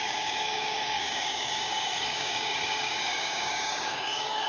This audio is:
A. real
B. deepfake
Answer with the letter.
B